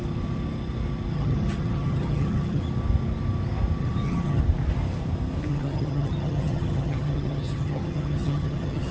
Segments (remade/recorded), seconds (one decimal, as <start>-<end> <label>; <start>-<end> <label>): 0.0-1.1 recorded; 1.1-2.6 remade; 2.6-3.8 recorded; 3.8-4.4 remade; 4.4-5.5 recorded; 5.5-8.9 remade